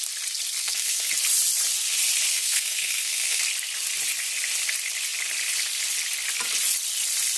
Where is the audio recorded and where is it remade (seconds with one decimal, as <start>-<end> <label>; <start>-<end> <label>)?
0.0-0.6 recorded; 0.6-1.1 remade; 1.1-2.3 recorded; 2.3-3.4 remade; 3.4-7.4 recorded